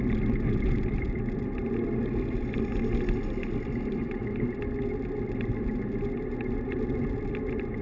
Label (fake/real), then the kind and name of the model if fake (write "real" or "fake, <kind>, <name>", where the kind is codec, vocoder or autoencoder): real